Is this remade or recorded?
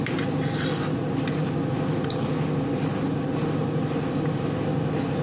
recorded